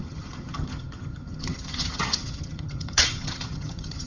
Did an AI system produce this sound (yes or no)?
yes